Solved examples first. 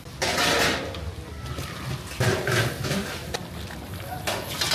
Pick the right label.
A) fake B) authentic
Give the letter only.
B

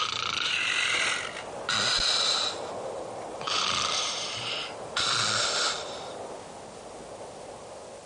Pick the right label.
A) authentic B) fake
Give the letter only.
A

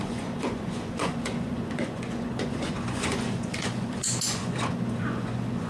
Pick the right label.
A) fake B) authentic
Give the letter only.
A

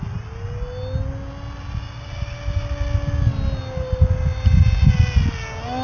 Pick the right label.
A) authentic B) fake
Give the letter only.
A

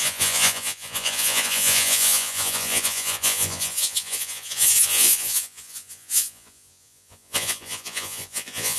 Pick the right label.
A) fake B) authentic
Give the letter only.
A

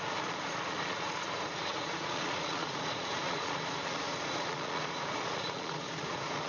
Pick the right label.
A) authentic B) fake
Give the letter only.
B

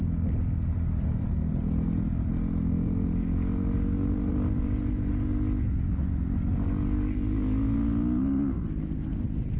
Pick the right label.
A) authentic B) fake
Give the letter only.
A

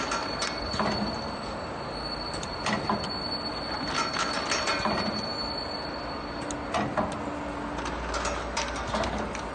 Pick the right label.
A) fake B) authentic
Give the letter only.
B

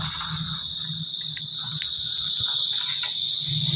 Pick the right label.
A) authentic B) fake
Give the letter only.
A